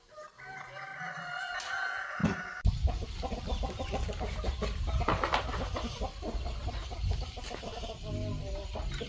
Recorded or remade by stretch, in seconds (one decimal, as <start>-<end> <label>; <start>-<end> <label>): 0.0-9.1 recorded